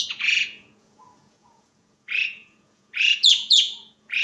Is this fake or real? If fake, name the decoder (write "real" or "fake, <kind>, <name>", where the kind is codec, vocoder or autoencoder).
fake, vocoder, Vocos